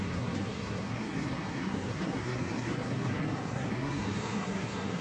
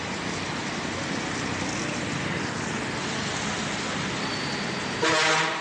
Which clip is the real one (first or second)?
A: second